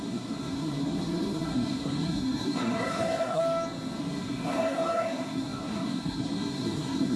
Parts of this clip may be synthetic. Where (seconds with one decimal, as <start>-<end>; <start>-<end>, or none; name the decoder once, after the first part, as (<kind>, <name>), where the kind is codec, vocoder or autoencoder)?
0.0-3.4 (codec, SNAC); 4.0-7.2